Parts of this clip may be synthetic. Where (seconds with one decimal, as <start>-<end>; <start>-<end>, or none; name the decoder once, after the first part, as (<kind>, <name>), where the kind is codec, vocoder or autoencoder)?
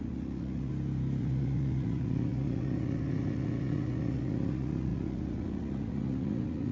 0.0-0.7 (vocoder, Vocos); 1.2-6.7